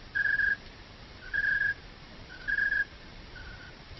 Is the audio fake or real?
real